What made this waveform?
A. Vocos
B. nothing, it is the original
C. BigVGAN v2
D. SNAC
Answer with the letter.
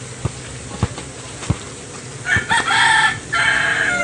B